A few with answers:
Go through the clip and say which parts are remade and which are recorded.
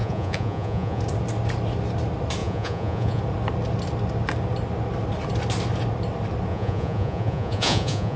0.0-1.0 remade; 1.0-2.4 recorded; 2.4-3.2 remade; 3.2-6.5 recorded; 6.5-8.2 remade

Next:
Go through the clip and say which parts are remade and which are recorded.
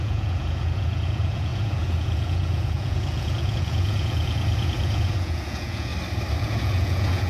0.0-5.9 remade; 5.9-6.4 recorded; 6.4-7.3 remade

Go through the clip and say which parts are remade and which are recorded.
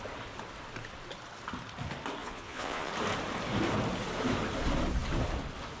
0.0-2.2 recorded; 2.2-2.9 remade; 2.9-5.8 recorded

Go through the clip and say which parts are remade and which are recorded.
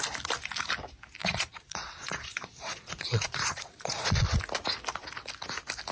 0.0-1.2 recorded; 1.2-4.3 remade; 4.3-5.9 recorded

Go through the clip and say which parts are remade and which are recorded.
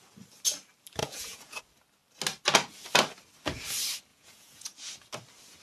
0.0-1.0 recorded; 1.0-1.6 remade; 1.6-4.1 recorded; 4.1-4.9 remade; 4.9-5.6 recorded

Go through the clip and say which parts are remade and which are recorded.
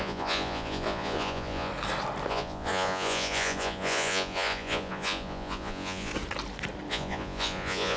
0.0-1.7 remade; 1.7-2.3 recorded; 2.3-6.1 remade; 6.1-6.9 recorded; 6.9-8.0 remade